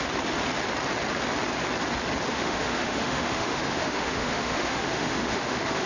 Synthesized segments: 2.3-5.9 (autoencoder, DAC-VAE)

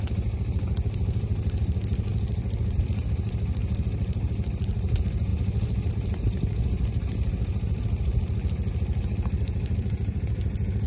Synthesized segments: none

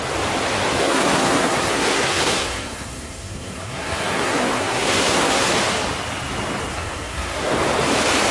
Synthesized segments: 0.8-5.5 (codec, SNAC); 6.7-7.5

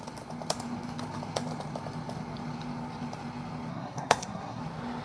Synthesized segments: 3.7-4.6 (codec, SNAC)

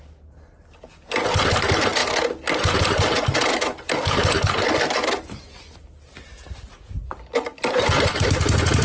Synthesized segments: none